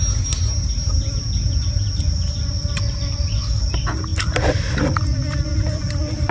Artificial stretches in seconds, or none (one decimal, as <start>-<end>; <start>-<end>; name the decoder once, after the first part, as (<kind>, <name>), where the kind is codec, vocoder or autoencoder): none